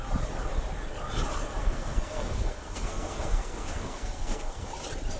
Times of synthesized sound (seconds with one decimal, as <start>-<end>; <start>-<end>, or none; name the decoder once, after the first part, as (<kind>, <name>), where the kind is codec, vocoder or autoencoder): 1.6-4.7 (codec, SNAC)